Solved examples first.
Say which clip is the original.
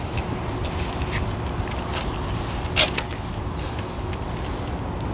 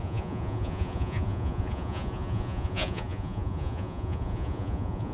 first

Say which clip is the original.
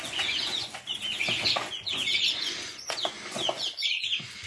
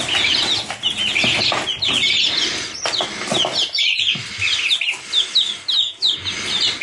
second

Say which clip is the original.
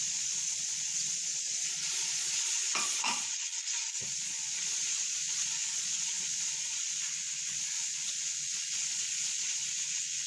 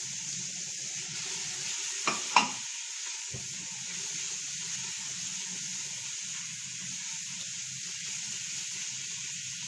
second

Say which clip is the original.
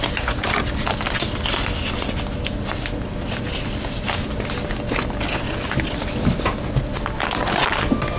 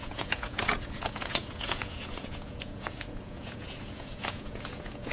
first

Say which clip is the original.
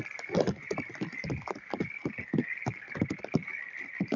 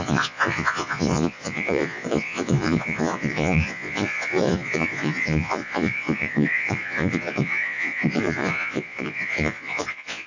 first